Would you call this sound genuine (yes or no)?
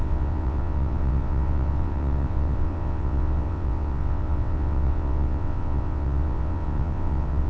no